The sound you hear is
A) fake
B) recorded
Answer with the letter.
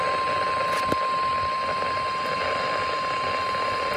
B